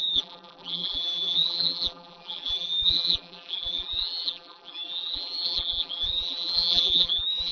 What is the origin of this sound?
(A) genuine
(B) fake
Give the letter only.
B